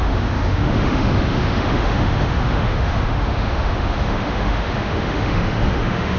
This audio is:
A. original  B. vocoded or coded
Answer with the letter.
B